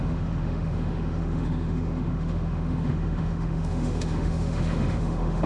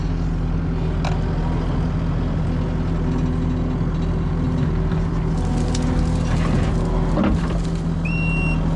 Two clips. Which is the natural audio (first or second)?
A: second